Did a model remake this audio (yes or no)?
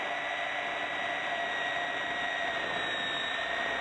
no